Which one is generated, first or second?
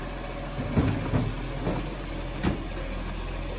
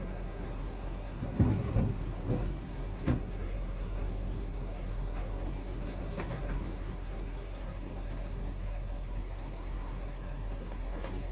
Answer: second